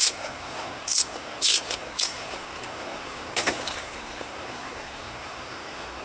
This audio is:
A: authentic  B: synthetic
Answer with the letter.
B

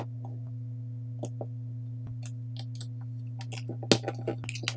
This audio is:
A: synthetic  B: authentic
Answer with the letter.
B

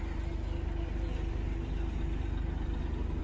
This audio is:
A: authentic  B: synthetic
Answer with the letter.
A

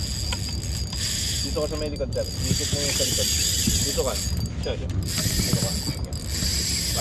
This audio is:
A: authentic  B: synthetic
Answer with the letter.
A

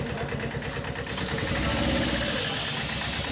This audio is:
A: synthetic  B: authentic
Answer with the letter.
B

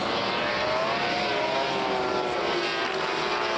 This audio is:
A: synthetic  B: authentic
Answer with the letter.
B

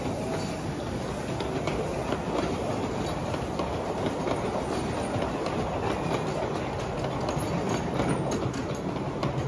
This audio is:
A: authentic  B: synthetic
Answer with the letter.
A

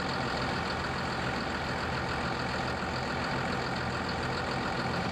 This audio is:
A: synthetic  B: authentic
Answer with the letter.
B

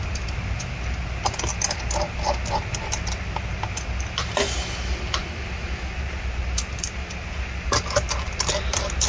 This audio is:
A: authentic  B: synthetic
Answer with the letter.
A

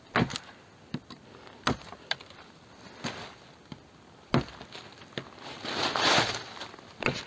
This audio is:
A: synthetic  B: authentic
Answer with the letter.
B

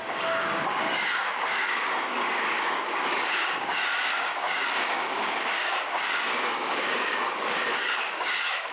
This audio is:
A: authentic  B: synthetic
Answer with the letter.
B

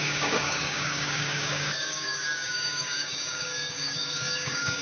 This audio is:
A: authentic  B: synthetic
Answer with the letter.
B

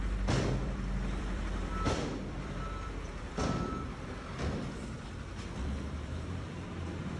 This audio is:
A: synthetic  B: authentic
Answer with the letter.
A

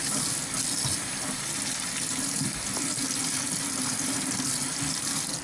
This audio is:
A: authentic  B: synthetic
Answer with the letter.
A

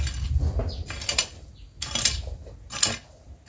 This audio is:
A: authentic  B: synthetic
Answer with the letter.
A